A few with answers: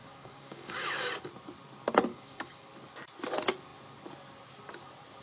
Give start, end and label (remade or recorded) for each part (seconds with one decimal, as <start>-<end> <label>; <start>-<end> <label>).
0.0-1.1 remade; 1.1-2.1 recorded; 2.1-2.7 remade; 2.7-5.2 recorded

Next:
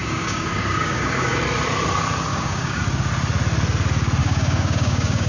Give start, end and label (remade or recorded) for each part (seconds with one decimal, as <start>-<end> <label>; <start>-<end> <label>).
0.0-1.4 remade; 1.4-2.3 recorded; 2.3-2.8 remade; 2.8-4.2 recorded; 4.2-5.3 remade

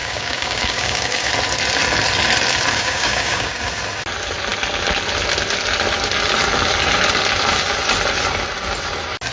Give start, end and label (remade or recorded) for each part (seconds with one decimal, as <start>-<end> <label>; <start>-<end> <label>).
0.0-1.3 remade; 1.3-2.7 recorded; 2.7-3.5 remade; 3.5-9.3 recorded

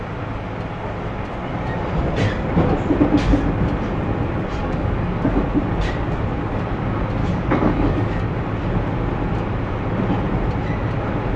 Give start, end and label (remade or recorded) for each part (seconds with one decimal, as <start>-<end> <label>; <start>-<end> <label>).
0.0-4.6 recorded; 4.6-5.4 remade; 5.4-7.2 recorded; 7.2-8.4 remade; 8.4-11.4 recorded